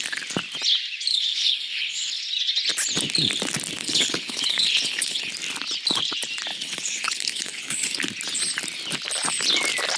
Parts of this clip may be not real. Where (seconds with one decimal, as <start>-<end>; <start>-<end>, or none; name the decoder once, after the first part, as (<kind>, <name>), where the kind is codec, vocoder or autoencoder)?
1.1-2.2 (codec, HILCodec); 3.8-5.3; 6.5-8.0